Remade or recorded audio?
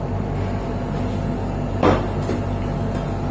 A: recorded